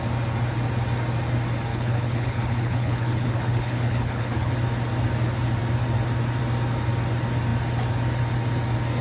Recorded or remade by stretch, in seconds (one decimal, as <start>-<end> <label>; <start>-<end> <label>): 0.0-1.7 recorded; 1.7-4.5 remade; 4.5-9.0 recorded